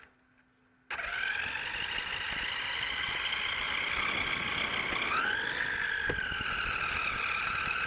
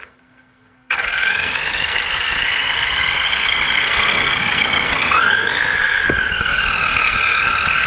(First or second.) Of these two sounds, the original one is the first